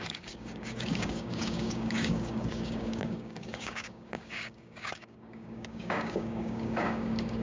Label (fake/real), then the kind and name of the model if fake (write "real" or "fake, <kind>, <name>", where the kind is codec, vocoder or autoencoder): fake, codec, DAC